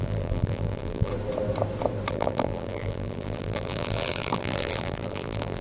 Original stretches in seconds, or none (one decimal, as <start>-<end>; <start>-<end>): 1.1-2.1